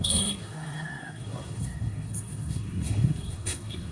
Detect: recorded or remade remade